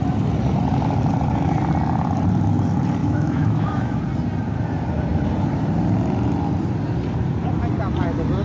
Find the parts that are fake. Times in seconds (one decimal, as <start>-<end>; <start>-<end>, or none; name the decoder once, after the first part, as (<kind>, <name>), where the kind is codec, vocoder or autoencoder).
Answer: 3.0-4.0 (autoencoder, DAC-VAE)